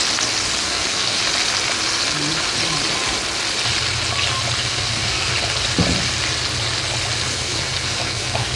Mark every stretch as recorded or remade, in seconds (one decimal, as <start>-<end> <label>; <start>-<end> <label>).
0.0-0.6 recorded; 0.6-1.2 remade; 1.2-4.6 recorded; 4.6-5.3 remade; 5.3-7.3 recorded; 7.3-8.6 remade